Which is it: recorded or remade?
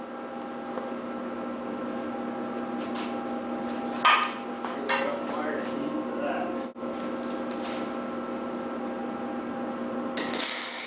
recorded